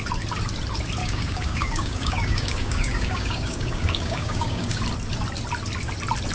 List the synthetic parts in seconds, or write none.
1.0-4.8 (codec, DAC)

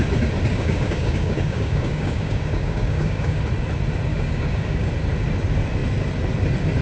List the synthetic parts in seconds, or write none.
0.5-3.4 (codec, DAC); 4.1-4.9